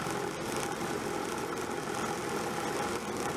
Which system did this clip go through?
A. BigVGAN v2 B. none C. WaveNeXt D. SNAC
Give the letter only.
B